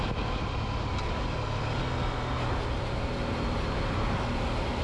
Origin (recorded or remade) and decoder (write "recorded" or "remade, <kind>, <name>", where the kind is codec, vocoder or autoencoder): recorded